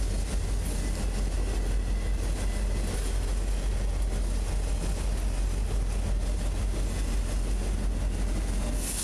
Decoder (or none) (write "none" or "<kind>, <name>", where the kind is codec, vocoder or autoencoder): none